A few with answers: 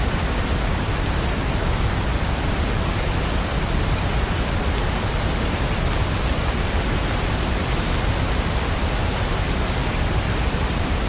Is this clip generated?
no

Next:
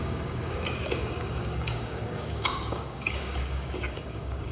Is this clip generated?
yes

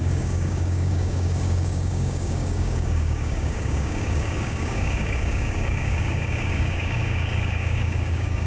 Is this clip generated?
yes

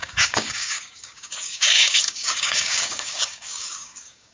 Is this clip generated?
yes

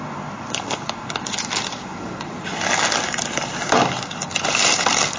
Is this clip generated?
no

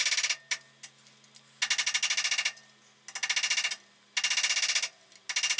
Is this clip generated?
no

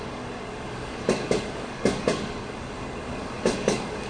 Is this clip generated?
yes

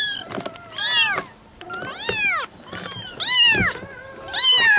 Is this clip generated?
no